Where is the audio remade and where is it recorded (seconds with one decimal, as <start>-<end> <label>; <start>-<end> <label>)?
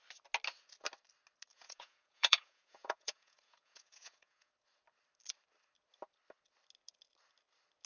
0.0-1.5 recorded; 1.5-4.5 remade; 4.5-7.9 recorded